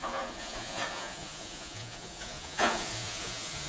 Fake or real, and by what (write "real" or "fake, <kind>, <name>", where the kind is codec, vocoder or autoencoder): fake, vocoder, Vocos